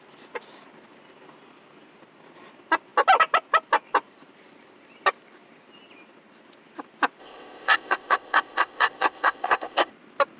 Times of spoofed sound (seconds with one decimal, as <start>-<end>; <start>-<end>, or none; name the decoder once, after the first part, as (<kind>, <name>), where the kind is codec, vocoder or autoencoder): 7.2-9.9 (codec, ZipCodec)